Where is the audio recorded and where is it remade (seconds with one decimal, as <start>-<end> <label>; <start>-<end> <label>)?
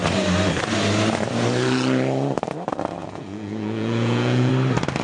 0.0-3.0 recorded; 3.0-4.5 remade; 4.5-5.0 recorded